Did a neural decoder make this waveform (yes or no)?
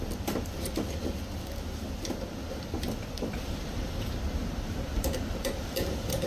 no